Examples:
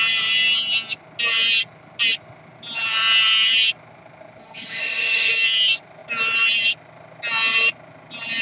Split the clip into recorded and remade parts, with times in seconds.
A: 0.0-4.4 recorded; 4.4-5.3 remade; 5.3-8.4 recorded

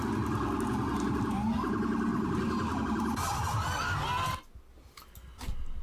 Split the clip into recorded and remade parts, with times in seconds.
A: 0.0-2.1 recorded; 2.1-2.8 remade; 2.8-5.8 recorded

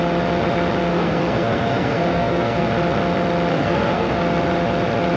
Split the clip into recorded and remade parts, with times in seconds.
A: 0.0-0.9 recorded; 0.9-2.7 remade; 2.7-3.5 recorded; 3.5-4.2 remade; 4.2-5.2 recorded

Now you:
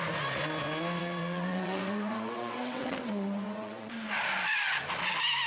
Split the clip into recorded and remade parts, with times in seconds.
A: 0.0-1.0 recorded; 1.0-3.9 remade; 3.9-5.5 recorded

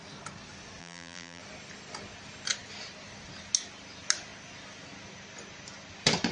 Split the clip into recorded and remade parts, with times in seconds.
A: 0.0-0.8 recorded; 0.8-1.4 remade; 1.4-6.3 recorded

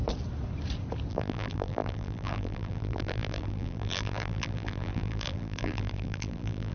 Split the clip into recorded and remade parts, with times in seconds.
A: 0.0-1.1 recorded; 1.1-6.7 remade

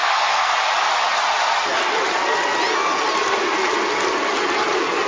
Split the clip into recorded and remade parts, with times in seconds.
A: 0.0-0.5 remade; 0.5-5.1 recorded

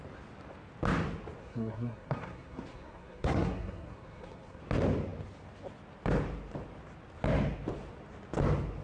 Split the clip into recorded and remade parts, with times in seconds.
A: 0.0-1.4 recorded; 1.4-4.6 remade; 4.6-8.8 recorded